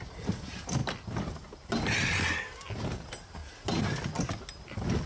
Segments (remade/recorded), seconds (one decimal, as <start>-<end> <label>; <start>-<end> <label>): 0.0-5.1 recorded